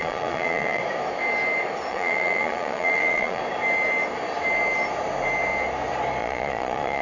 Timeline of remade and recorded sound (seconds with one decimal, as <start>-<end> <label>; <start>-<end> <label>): 0.0-0.8 remade; 0.8-1.9 recorded; 1.9-3.4 remade; 3.4-6.2 recorded; 6.2-7.0 remade